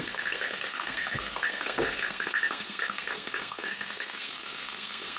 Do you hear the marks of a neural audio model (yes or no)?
yes